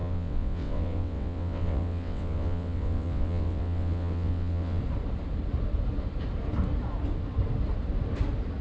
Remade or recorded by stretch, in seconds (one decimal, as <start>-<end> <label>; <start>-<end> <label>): 0.0-4.8 remade; 4.8-8.6 recorded

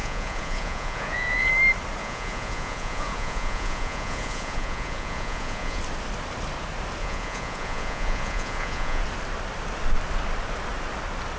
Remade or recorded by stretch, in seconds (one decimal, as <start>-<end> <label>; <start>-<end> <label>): 0.0-1.5 remade; 1.5-2.0 recorded; 2.0-5.8 remade; 5.8-7.0 recorded; 7.0-9.0 remade; 9.0-11.4 recorded

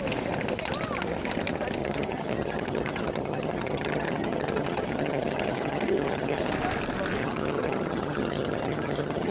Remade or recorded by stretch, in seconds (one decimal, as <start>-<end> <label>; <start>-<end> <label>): 0.0-1.8 recorded; 1.8-6.5 remade; 6.5-7.2 recorded; 7.2-9.3 remade

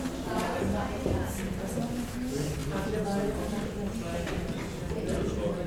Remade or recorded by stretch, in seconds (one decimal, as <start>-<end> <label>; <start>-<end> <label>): 0.0-5.7 recorded

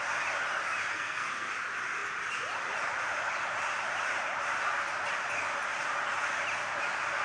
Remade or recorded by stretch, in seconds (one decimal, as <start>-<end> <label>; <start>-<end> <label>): 0.0-0.9 recorded; 0.9-1.5 remade; 1.5-7.2 recorded

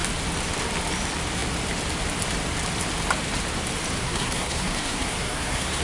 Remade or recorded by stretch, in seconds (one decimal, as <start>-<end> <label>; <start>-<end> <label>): 0.0-4.0 recorded; 4.0-5.8 remade

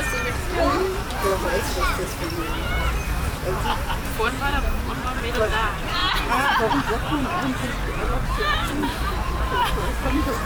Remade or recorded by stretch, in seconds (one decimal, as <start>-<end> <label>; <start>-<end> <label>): 0.0-6.0 remade; 6.0-6.8 recorded; 6.8-8.0 remade; 8.0-8.7 recorded; 8.7-10.5 remade